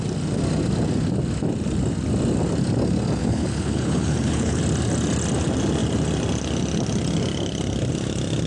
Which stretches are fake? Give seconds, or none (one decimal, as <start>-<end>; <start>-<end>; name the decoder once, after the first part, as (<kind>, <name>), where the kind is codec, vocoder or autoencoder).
3.2-4.6 (codec, HILCodec)